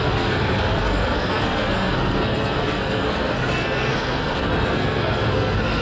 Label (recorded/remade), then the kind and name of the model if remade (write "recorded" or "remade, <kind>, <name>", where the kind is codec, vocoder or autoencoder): remade, codec, SNAC